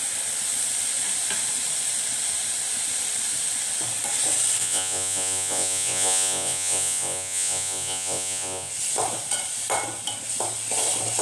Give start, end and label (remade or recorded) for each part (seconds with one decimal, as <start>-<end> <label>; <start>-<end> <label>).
0.0-4.6 recorded; 4.6-8.7 remade; 8.7-11.2 recorded